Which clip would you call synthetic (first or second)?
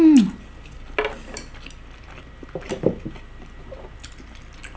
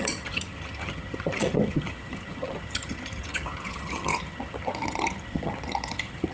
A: second